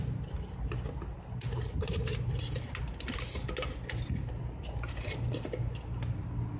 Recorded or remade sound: recorded